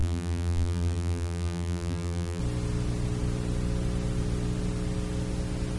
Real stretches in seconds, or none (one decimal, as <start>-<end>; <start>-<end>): 2.4-5.8

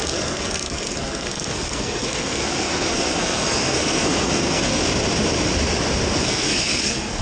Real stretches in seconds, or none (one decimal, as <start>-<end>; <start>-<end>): 4.8-6.2

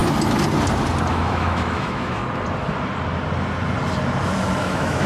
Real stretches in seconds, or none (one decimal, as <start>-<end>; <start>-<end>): 0.0-1.1; 2.2-4.6